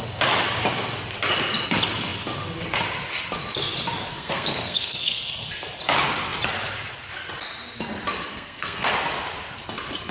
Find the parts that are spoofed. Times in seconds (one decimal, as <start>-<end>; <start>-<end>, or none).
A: 4.1-5.5; 8.3-8.9